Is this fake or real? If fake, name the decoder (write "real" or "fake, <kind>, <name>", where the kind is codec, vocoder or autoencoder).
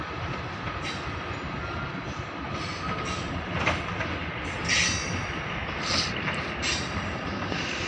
real